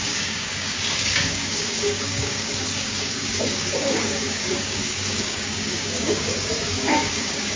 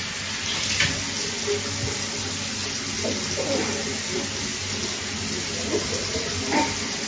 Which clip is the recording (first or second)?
second